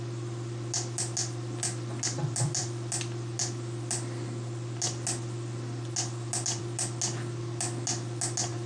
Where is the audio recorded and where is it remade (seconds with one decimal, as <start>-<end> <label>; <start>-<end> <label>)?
0.0-8.7 recorded